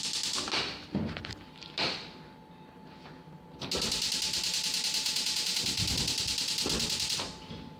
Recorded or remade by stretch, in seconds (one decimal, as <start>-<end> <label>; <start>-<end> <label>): 0.0-5.0 recorded; 5.0-5.6 remade; 5.6-7.8 recorded